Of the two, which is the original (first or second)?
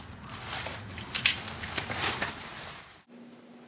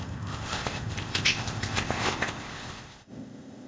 first